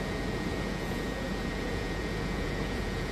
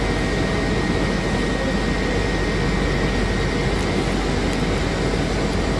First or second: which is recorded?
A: second